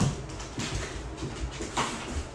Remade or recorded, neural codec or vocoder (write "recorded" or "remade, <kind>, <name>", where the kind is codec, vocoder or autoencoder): recorded